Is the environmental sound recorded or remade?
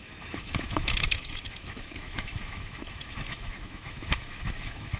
remade